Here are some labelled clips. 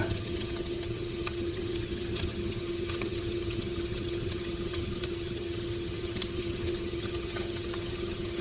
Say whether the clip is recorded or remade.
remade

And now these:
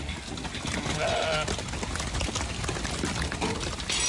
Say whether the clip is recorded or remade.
recorded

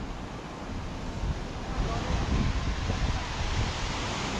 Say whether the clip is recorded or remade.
recorded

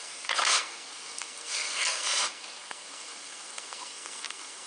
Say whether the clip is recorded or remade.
remade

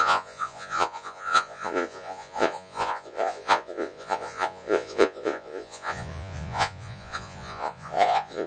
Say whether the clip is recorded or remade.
remade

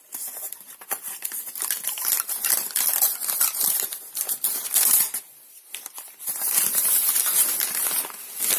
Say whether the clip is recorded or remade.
remade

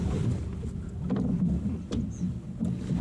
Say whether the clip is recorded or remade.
recorded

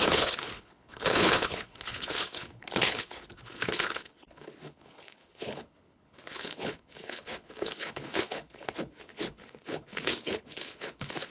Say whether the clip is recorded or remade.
remade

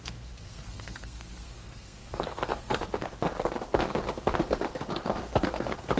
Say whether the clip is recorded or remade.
remade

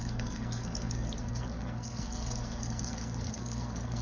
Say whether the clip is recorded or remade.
remade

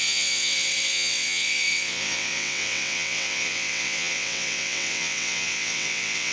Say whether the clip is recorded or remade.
remade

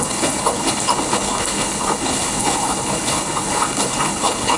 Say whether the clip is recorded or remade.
remade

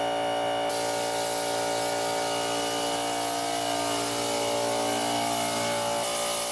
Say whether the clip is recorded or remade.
recorded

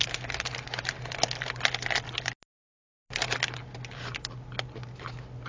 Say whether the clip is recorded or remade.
recorded